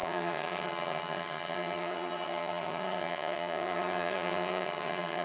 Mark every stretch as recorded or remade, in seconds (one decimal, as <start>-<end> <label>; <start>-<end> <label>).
0.0-5.2 remade